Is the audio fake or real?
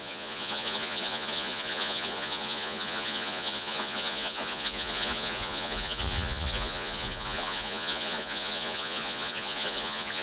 fake